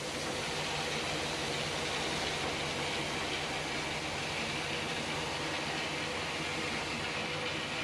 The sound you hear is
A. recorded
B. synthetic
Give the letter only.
A